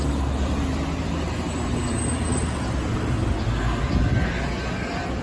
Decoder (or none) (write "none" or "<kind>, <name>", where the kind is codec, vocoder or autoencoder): none